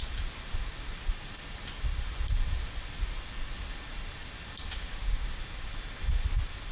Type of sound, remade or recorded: recorded